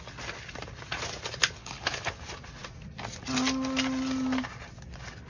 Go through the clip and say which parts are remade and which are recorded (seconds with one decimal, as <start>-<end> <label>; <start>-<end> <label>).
0.0-1.6 recorded; 1.6-2.1 remade; 2.1-5.3 recorded